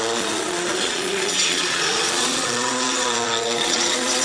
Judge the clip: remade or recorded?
remade